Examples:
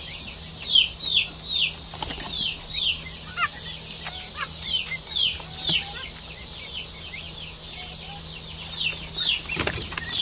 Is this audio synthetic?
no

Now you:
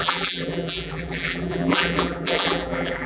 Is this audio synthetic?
yes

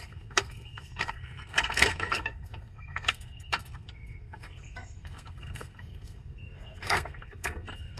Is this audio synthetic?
yes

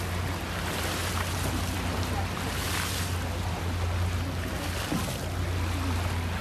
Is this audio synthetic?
no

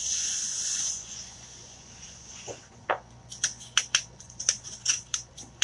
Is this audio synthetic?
yes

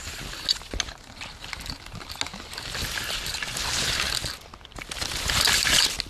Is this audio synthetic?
no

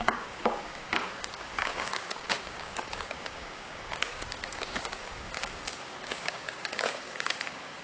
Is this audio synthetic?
yes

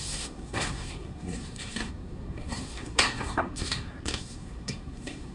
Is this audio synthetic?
yes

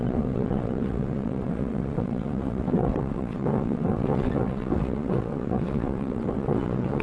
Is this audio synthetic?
yes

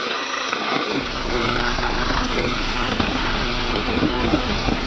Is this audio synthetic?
yes